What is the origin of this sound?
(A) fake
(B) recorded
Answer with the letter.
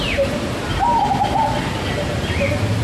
B